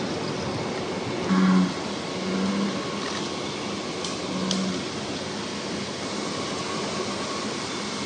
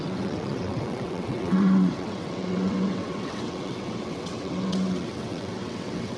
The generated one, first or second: second